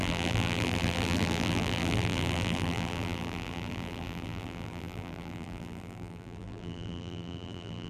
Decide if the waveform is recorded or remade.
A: remade